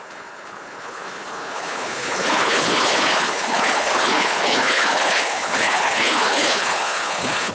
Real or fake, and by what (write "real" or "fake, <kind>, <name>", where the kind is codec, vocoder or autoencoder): fake, codec, HILCodec